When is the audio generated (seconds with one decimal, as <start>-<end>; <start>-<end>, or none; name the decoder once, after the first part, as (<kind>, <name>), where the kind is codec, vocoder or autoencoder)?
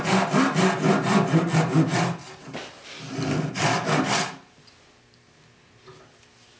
none